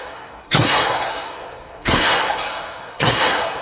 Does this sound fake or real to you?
fake